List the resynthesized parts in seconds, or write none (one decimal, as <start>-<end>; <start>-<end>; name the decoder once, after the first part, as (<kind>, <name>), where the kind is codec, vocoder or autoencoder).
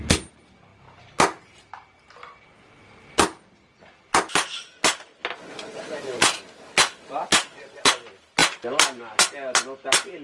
none